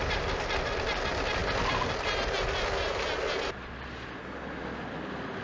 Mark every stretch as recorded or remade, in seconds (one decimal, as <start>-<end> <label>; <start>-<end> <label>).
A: 0.0-5.4 recorded